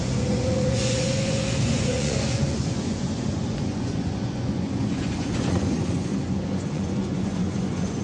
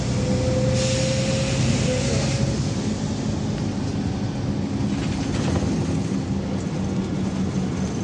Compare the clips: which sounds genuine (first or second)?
second